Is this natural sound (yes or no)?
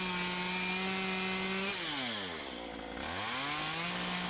yes